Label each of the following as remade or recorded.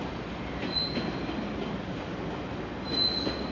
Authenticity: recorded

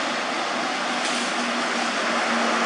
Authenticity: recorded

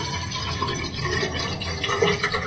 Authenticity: remade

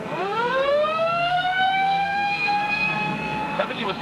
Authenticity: remade